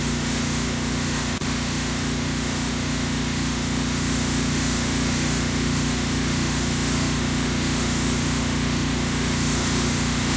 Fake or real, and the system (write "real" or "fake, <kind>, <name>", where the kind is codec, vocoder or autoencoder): fake, autoencoder, DAC-VAE